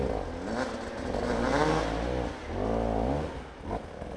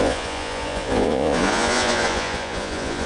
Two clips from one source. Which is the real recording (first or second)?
first